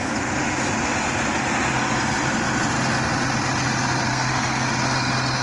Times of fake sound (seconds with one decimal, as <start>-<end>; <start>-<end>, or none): 4.1-4.7